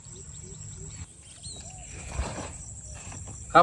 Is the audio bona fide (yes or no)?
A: yes